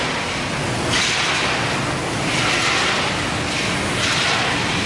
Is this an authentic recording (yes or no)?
yes